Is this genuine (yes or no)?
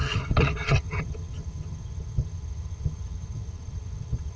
no